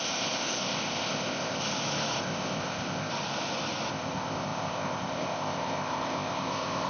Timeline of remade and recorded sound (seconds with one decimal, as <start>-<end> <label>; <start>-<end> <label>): 0.0-1.6 remade; 1.6-2.2 recorded; 2.2-3.1 remade; 3.1-3.9 recorded; 3.9-6.9 remade

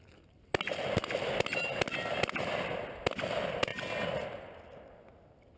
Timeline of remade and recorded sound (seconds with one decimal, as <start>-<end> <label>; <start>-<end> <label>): 0.0-5.6 recorded

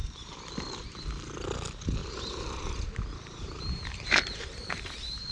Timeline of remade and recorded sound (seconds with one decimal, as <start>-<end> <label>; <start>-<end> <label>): 0.0-0.5 remade; 0.5-2.0 recorded; 2.0-5.3 remade

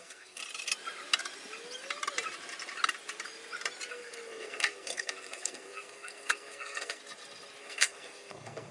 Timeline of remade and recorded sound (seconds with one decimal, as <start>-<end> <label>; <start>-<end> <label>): 0.0-0.4 remade; 0.4-3.9 recorded; 3.9-7.0 remade; 7.0-7.6 recorded; 7.6-8.7 remade

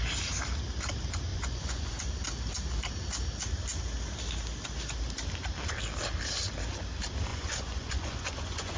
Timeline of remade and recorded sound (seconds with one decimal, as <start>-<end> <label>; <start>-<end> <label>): 0.0-1.3 recorded; 1.3-2.1 remade; 2.1-7.3 recorded; 7.3-8.8 remade

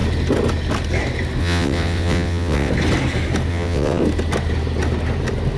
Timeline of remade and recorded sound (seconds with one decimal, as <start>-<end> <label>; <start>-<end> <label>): 0.0-1.4 recorded; 1.4-2.7 remade; 2.7-3.5 recorded; 3.5-4.0 remade; 4.0-5.6 recorded

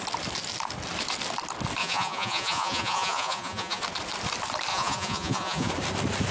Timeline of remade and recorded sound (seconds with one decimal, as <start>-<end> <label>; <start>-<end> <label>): 0.0-1.8 recorded; 1.8-3.8 remade; 3.8-4.7 recorded; 4.7-5.7 remade; 5.7-6.3 recorded